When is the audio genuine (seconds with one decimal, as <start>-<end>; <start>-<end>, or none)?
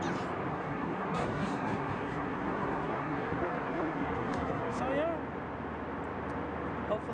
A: 0.0-0.5; 4.8-7.1